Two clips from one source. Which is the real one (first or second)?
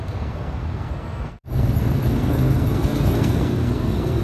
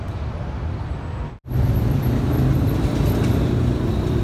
second